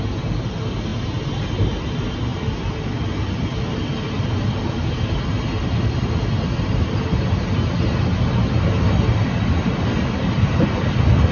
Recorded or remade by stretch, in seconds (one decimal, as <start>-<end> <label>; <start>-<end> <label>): 0.0-11.3 recorded